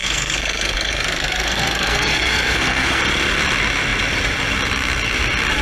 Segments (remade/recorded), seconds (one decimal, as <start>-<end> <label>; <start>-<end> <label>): 0.0-3.0 remade; 3.0-5.6 recorded